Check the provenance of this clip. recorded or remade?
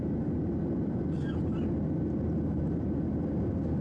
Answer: recorded